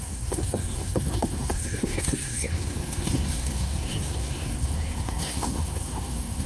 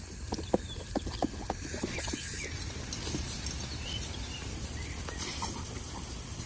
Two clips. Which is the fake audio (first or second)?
first